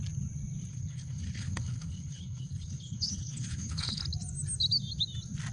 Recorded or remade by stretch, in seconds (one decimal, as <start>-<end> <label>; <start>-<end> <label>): 0.0-0.7 recorded; 0.7-4.0 remade; 4.0-5.5 recorded